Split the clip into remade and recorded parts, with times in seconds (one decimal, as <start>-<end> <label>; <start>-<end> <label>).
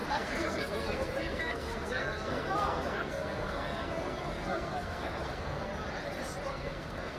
0.0-5.7 remade; 5.7-6.5 recorded; 6.5-7.2 remade